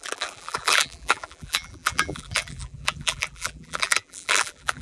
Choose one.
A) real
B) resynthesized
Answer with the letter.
B